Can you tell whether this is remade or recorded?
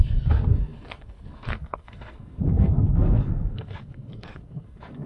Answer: remade